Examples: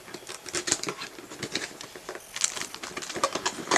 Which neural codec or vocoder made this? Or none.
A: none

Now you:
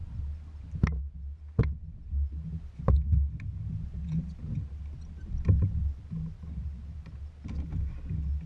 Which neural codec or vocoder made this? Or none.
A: none